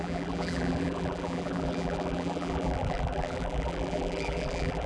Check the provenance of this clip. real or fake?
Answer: fake